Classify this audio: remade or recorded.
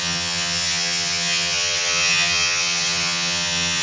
remade